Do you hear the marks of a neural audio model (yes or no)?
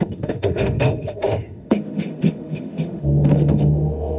yes